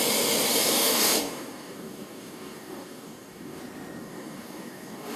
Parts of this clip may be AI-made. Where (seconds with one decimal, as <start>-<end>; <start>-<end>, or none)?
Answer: 0.5-3.6; 4.0-5.2